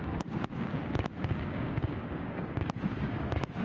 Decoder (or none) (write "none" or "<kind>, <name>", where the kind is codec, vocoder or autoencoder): codec, DAC